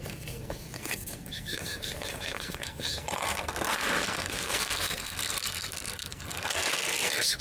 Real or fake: fake